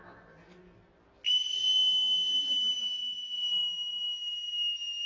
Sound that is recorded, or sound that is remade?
recorded